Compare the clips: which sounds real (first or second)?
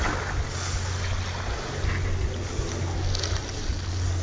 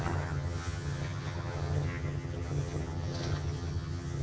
first